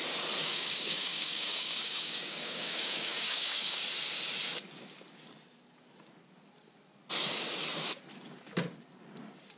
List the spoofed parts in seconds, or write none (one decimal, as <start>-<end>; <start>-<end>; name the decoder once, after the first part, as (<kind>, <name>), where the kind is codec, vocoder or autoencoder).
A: 0.4-3.8 (codec, DAC)